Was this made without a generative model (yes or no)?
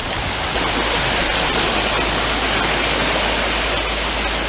yes